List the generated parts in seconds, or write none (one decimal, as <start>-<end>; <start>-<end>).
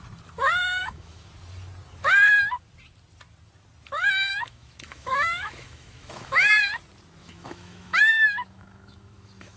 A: 0.8-1.3; 4.3-6.6; 7.2-9.6